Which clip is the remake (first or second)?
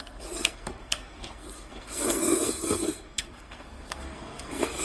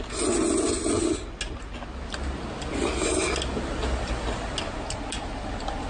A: first